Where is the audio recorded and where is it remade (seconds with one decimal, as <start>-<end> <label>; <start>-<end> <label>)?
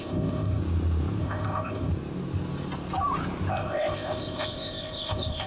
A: 0.0-0.6 remade; 0.6-1.2 recorded; 1.2-1.9 remade; 1.9-3.5 recorded; 3.5-5.5 remade